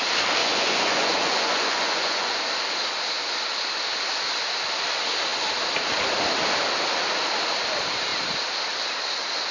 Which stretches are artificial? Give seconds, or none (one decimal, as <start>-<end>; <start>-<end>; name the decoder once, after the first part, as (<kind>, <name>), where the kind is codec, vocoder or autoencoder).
0.4-2.4 (vocoder, Vocos)